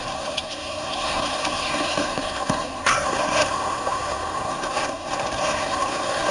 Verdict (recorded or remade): remade